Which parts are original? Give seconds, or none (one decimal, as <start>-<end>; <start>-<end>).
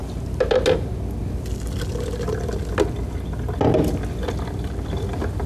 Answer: 0.0-5.5